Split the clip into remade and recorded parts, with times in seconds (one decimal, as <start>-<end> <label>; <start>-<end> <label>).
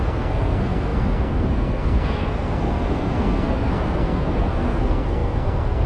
0.0-5.9 remade